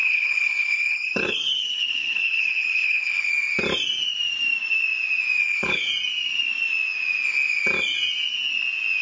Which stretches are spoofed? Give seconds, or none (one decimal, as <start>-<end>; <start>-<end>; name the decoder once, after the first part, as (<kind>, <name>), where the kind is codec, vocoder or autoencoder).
0.0-3.3 (codec, HILCodec); 5.4-5.9